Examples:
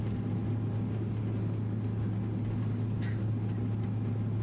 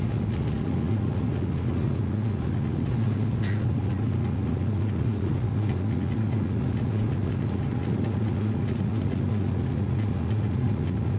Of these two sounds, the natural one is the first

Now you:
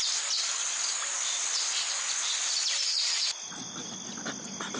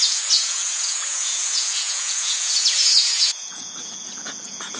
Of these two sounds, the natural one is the first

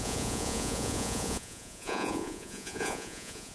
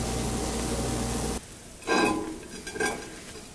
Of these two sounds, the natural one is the second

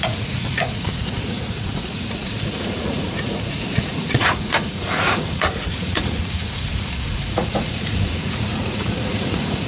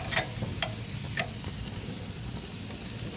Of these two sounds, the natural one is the second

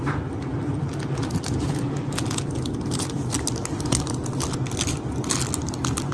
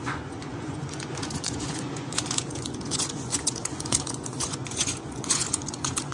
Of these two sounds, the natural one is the first